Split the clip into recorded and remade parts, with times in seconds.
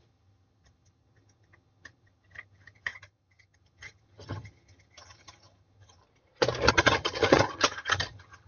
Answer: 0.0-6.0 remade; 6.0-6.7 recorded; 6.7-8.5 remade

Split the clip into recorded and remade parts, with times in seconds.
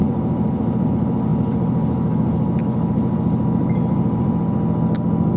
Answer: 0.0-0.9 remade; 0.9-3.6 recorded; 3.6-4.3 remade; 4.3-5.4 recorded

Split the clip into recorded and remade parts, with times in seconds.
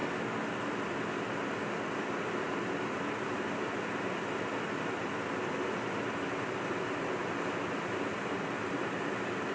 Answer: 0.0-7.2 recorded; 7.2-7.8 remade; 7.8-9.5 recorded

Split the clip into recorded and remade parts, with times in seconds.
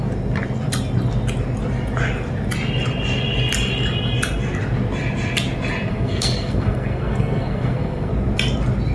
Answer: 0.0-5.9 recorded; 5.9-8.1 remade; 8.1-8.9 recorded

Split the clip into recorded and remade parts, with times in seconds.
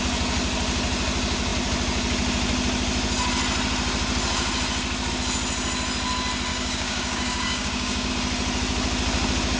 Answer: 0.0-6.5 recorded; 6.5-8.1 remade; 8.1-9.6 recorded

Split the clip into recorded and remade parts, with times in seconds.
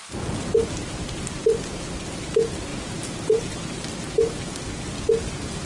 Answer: 0.0-0.8 recorded; 0.8-1.8 remade; 1.8-2.7 recorded; 2.7-3.8 remade; 3.8-5.7 recorded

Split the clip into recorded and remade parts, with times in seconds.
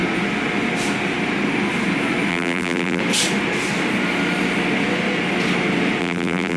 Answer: 0.0-2.3 recorded; 2.3-3.0 remade; 3.0-6.0 recorded; 6.0-6.6 remade